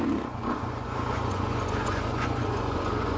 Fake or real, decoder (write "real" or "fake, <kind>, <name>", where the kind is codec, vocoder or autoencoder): fake, vocoder, Vocos